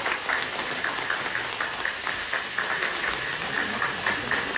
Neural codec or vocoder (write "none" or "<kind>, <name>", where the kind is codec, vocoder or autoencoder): none